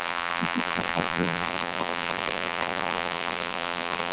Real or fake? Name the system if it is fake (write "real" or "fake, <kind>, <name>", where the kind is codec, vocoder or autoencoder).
fake, vocoder, BigVGAN v2